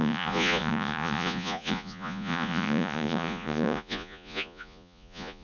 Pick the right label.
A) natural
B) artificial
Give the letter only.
B